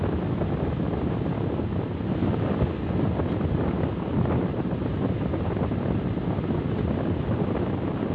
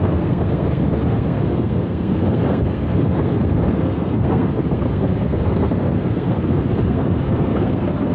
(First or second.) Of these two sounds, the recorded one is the first